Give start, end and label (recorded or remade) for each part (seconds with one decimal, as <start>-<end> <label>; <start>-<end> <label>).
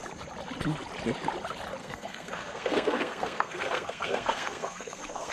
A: 0.0-1.8 recorded; 1.8-5.3 remade